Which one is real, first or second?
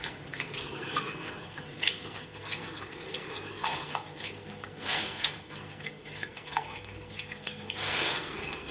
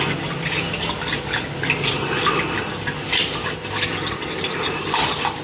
second